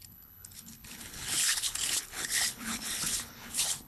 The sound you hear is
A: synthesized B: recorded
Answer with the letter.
A